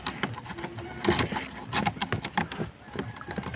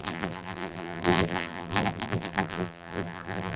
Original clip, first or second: first